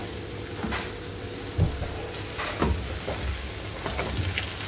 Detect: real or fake real